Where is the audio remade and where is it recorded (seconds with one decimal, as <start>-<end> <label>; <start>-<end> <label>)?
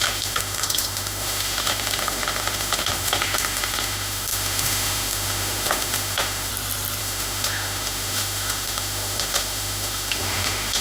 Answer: 0.0-6.5 remade; 6.5-7.0 recorded; 7.0-10.8 remade